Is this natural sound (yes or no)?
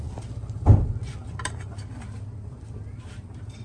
no